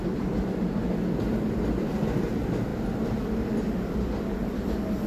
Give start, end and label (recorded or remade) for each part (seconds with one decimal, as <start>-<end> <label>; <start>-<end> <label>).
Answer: 0.0-5.1 recorded